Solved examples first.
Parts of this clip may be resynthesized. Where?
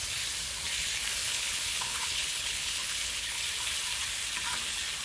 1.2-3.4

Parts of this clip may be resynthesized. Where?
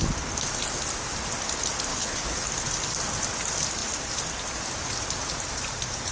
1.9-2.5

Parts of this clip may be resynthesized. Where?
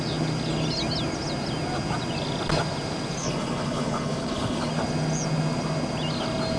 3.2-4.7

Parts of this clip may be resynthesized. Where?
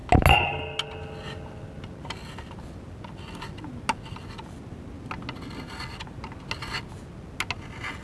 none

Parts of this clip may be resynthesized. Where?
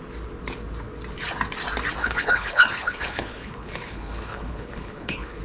2.0-5.4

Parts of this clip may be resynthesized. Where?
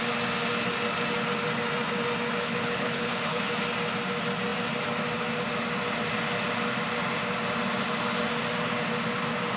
2.4-3.5